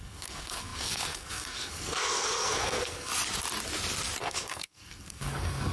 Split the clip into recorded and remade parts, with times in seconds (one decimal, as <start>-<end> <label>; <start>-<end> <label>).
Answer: 0.0-3.1 remade; 3.1-4.2 recorded; 4.2-5.7 remade